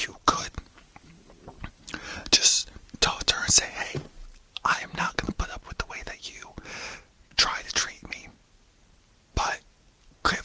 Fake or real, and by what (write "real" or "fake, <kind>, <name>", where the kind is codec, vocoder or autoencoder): real